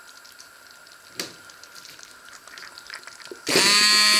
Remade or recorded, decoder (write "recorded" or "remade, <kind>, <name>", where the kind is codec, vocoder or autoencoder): recorded